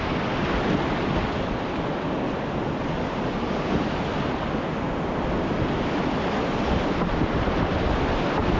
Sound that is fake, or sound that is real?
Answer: real